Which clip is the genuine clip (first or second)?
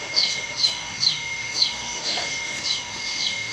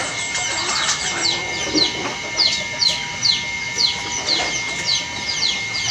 second